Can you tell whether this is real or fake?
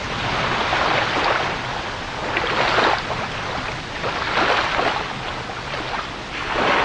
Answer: real